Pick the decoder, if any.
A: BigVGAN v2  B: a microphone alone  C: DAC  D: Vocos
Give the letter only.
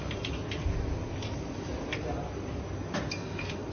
B